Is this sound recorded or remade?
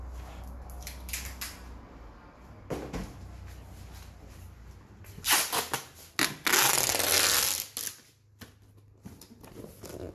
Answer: recorded